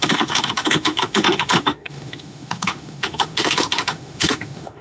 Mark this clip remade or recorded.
remade